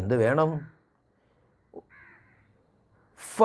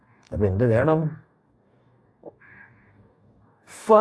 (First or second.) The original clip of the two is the first